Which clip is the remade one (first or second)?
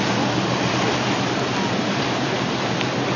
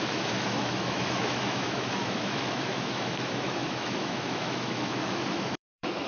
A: second